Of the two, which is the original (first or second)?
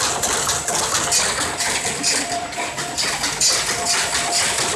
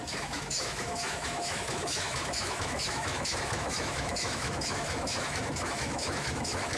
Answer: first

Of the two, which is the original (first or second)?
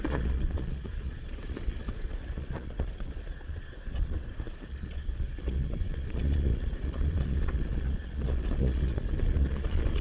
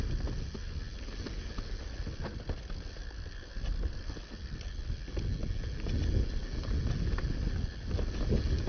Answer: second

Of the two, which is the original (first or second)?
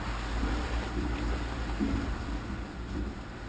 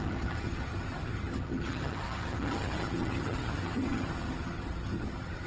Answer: first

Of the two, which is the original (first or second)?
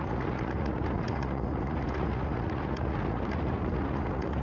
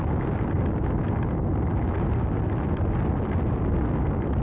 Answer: second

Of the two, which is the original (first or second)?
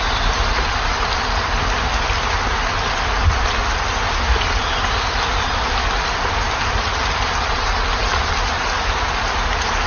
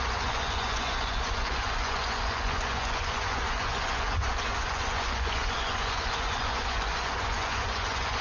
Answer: first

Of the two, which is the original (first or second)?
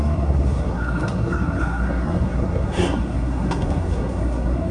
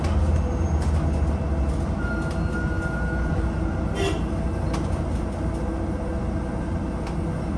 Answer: second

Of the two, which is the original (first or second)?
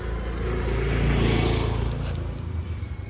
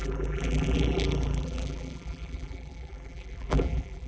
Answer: first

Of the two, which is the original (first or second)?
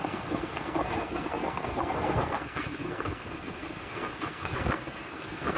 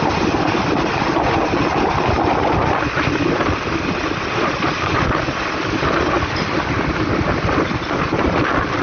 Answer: second